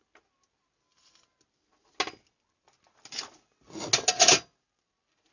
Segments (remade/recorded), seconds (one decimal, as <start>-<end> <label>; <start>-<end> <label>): 0.0-5.3 recorded

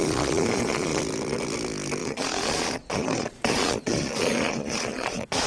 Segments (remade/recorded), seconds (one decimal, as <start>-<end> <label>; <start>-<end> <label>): 0.0-1.0 remade; 1.0-2.0 recorded; 2.0-5.5 remade

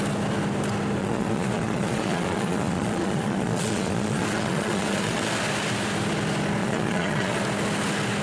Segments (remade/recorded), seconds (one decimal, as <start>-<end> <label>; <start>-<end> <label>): 0.0-1.0 recorded; 1.0-5.3 remade; 5.3-6.6 recorded; 6.6-7.4 remade; 7.4-8.2 recorded

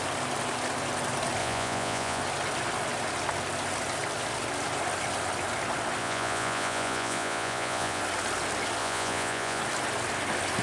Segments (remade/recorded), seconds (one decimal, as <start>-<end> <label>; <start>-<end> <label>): 0.0-1.4 recorded; 1.4-2.2 remade; 2.2-6.0 recorded; 6.0-8.0 remade; 8.0-8.8 recorded; 8.8-9.6 remade; 9.6-10.6 recorded

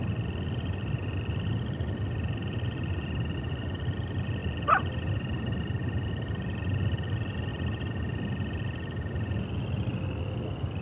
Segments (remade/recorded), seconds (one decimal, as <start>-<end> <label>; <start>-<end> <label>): 0.0-10.8 recorded